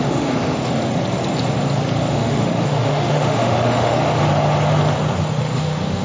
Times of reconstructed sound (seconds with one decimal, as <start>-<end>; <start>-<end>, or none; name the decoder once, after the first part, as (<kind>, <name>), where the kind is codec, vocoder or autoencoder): 0.0-0.6 (autoencoder, DAC-VAE); 2.1-4.0; 5.3-6.0